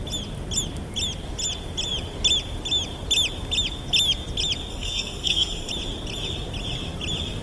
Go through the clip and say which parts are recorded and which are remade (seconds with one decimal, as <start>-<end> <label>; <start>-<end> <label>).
0.0-4.7 recorded; 4.7-5.7 remade; 5.7-7.4 recorded